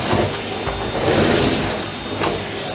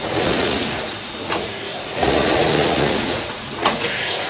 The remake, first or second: second